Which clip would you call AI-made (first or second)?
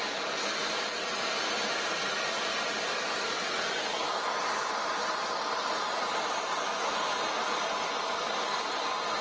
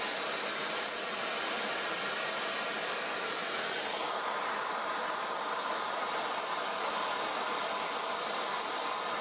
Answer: second